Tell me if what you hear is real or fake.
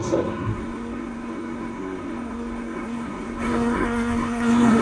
fake